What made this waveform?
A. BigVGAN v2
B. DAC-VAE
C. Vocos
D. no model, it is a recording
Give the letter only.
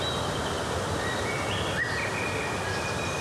D